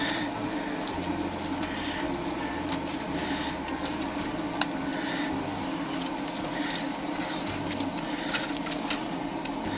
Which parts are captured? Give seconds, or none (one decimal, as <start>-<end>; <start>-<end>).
0.0-9.8